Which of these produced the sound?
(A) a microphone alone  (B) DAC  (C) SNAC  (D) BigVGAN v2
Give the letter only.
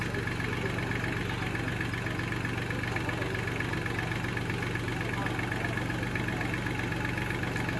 A